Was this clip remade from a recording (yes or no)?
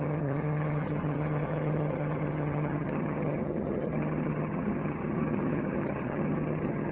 yes